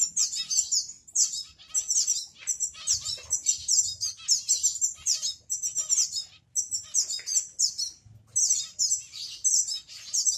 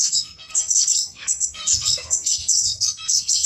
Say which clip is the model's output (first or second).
second